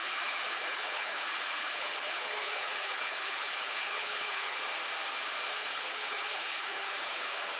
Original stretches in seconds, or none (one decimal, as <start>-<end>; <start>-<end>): 4.6-5.5